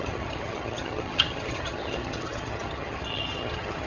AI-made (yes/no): yes